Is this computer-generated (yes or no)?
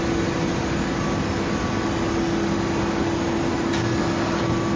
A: no